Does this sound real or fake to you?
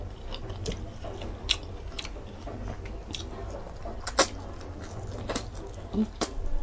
real